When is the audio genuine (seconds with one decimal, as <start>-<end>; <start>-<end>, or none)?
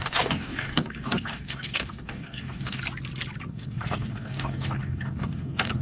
2.8-3.5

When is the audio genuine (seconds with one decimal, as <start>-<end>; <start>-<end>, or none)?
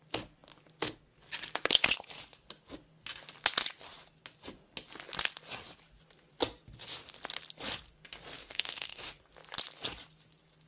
0.0-8.4; 9.1-10.7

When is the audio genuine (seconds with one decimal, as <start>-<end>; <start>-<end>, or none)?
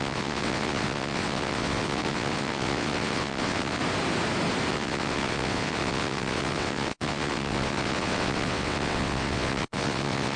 3.8-4.7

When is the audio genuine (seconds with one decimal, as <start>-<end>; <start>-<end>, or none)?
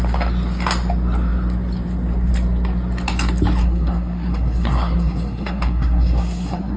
0.0-3.6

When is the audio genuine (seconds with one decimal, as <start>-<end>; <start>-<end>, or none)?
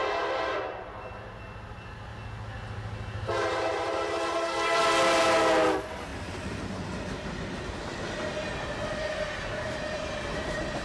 0.0-10.8